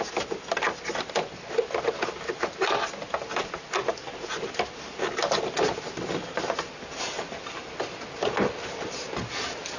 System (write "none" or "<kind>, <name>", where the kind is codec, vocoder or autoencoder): none